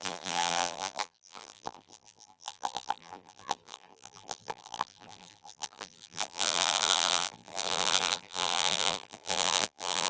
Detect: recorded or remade remade